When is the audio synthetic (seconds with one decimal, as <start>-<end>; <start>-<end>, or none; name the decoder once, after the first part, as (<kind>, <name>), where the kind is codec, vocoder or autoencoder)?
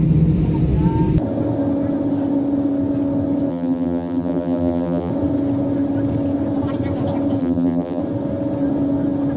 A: 3.5-5.1 (vocoder, BigVGAN v2); 7.4-8.0